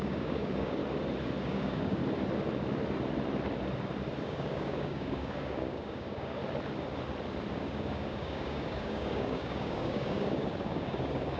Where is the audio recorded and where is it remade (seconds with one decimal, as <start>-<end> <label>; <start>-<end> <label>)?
0.0-0.8 remade; 0.8-1.4 recorded; 1.4-2.0 remade; 2.0-4.2 recorded; 4.2-6.4 remade; 6.4-7.5 recorded; 7.5-11.4 remade